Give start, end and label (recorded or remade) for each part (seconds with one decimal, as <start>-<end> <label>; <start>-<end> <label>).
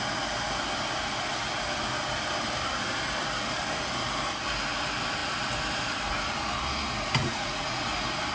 0.0-7.2 recorded; 7.2-7.8 remade; 7.8-8.3 recorded